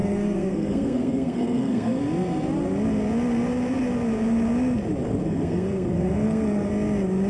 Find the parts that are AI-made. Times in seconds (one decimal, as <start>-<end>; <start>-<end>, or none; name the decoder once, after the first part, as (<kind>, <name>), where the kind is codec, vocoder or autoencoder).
0.0-2.0 (codec, SNAC); 5.2-6.7